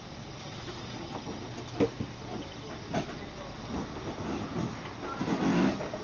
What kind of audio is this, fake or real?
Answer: real